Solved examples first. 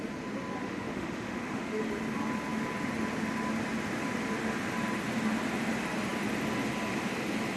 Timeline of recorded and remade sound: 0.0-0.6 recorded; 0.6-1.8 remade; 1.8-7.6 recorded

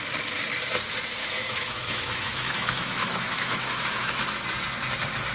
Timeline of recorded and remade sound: 0.0-1.2 recorded; 1.2-4.2 remade; 4.2-5.3 recorded